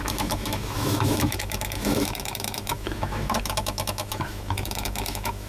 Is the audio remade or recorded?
remade